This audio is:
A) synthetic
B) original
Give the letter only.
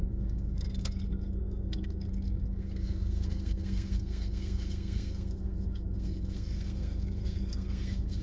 A